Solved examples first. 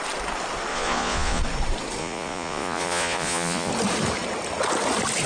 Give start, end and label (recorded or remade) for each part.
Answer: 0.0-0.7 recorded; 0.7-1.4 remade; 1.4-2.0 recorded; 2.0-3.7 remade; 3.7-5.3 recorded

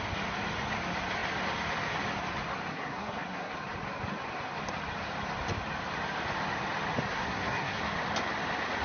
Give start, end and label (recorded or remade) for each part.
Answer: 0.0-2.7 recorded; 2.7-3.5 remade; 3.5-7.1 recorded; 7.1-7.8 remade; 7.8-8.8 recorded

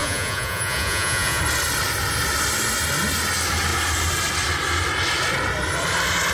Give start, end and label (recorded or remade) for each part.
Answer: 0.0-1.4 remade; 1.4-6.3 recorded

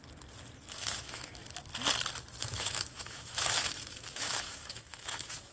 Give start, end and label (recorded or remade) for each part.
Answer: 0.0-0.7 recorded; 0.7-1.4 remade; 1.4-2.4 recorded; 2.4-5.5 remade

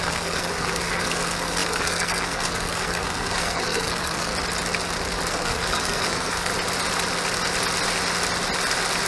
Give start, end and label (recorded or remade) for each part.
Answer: 0.0-4.3 remade; 4.3-5.3 recorded; 5.3-6.5 remade; 6.5-9.1 recorded

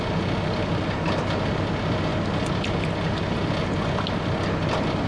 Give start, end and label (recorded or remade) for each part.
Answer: 0.0-5.1 recorded

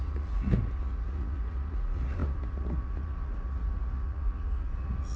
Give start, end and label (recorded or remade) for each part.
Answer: 0.0-5.2 remade